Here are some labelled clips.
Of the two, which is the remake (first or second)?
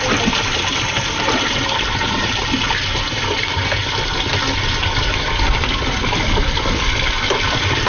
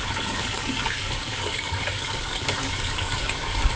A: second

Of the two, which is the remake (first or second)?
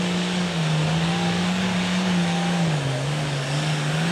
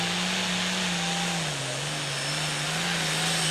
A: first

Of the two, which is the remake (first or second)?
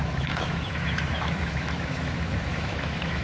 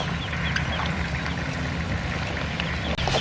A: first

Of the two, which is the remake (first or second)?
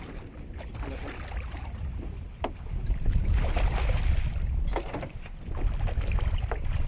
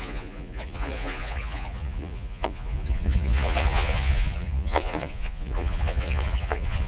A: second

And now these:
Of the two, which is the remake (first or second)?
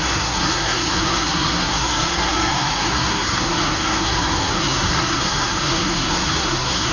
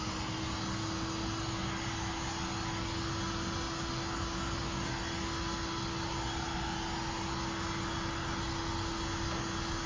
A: first